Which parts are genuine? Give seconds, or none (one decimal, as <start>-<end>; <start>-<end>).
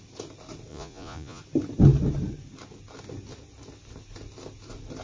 0.0-0.7; 1.4-5.0